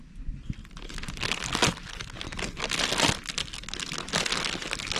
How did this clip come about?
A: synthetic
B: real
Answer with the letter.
B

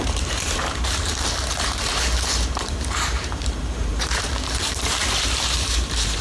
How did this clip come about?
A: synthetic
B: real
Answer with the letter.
A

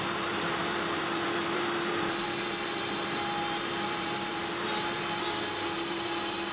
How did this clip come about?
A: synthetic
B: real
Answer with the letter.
A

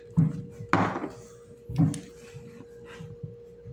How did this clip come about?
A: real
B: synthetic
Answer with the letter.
A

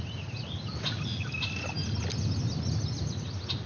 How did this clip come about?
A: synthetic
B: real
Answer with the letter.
B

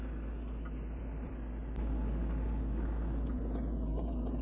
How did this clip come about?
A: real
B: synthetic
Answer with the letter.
A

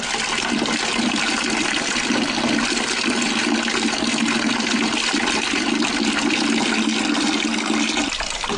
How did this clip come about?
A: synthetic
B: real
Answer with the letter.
B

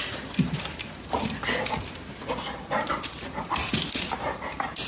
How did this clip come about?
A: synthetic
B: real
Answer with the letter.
B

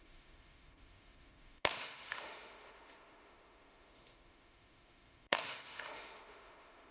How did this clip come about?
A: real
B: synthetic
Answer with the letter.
B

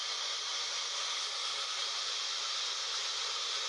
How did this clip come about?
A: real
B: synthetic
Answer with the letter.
A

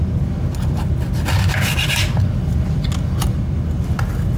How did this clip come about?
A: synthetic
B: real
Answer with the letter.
B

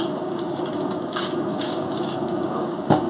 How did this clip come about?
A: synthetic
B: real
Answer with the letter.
A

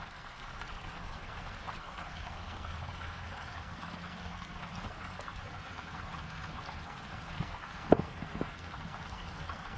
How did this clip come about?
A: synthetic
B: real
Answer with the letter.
A